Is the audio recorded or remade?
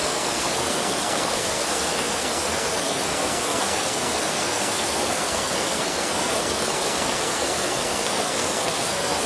remade